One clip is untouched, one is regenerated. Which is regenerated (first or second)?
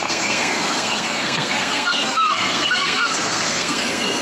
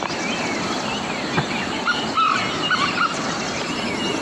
first